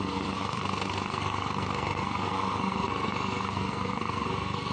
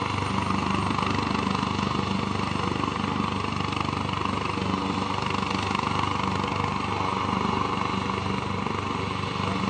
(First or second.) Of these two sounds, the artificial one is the first